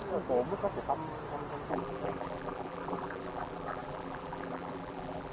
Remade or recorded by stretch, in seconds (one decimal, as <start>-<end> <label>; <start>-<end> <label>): 0.0-1.7 recorded; 1.7-5.3 remade